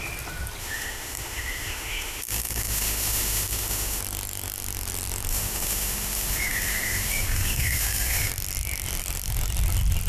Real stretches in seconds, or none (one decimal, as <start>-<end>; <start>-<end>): 0.0-0.6; 4.0-5.3; 8.3-10.1